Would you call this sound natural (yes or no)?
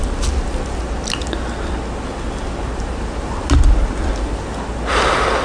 yes